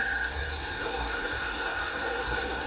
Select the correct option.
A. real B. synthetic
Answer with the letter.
B